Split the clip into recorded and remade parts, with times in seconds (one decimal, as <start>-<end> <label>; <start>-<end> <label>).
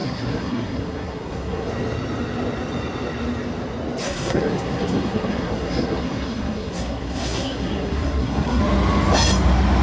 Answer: 0.0-1.7 remade; 1.7-4.0 recorded; 4.0-8.6 remade; 8.6-9.8 recorded